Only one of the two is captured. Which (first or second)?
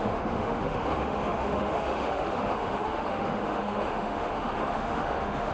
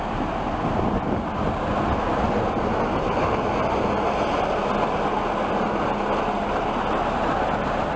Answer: second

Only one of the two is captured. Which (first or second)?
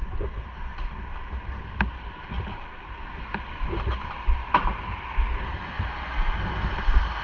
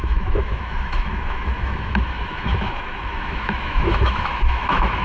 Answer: first